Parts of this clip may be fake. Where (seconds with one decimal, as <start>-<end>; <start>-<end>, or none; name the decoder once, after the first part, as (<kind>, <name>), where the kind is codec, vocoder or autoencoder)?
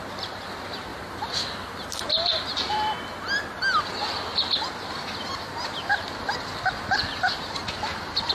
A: 0.9-2.5 (vocoder, BigVGAN v2)